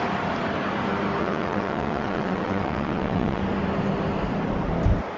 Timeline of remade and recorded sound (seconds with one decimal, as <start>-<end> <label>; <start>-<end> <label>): 0.0-1.2 recorded; 1.2-3.4 remade; 3.4-5.2 recorded